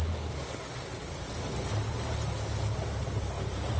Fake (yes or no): no